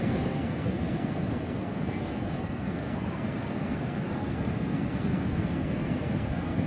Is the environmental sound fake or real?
fake